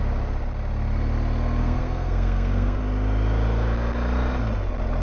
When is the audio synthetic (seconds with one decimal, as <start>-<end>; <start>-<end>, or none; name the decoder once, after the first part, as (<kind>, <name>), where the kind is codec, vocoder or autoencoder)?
1.6-2.8 (codec, SNAC)